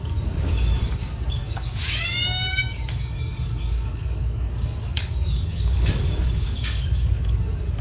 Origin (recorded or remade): remade